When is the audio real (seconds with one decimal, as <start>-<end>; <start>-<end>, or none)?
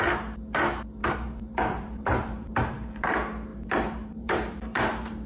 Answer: 0.0-1.0; 3.1-3.5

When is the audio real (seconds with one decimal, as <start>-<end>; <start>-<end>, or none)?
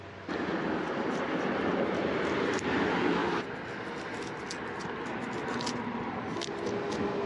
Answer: 0.0-7.3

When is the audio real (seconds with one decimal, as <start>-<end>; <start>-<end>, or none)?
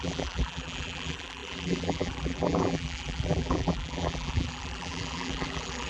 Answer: none